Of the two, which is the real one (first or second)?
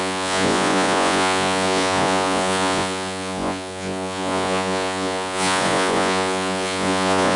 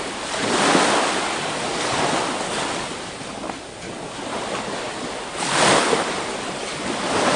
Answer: second